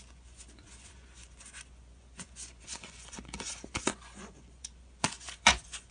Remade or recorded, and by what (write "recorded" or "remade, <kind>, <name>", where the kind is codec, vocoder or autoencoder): remade, vocoder, Vocos